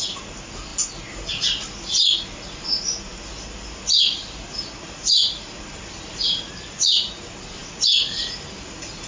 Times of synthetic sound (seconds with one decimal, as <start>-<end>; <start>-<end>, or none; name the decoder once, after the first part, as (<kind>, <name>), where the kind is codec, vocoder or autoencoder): 3.1-6.5 (vocoder, BigVGAN v2)